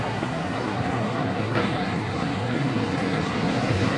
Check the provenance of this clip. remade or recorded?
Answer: remade